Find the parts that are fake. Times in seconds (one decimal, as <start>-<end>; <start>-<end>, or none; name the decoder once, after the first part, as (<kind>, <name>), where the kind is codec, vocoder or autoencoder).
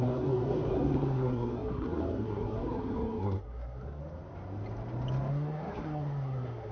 0.0-4.0 (codec, SNAC); 5.3-6.7